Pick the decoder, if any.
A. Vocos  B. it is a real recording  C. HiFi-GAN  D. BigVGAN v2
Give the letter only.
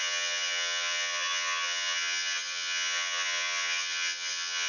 C